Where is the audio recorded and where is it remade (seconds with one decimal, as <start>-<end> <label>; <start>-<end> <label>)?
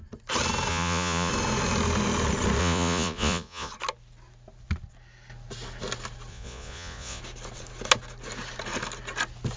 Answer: 0.0-0.7 recorded; 0.7-1.3 remade; 1.3-2.6 recorded; 2.6-3.7 remade; 3.7-6.3 recorded; 6.3-7.2 remade; 7.2-9.6 recorded